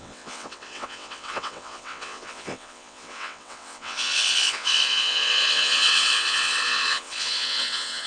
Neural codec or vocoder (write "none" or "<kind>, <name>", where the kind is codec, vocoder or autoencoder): vocoder, WaveNeXt